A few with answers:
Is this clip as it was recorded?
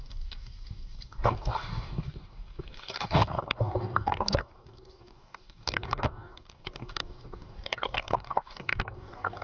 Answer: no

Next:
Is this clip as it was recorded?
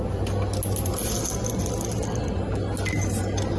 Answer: yes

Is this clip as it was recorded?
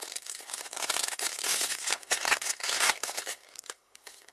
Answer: no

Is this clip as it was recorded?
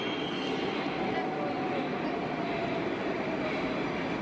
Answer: yes